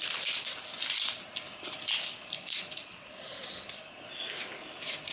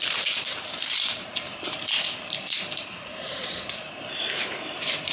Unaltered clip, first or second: first